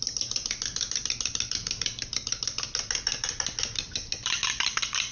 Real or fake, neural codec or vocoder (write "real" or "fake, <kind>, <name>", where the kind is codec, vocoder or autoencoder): real